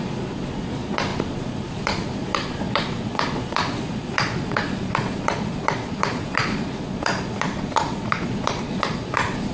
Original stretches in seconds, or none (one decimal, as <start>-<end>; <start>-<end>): none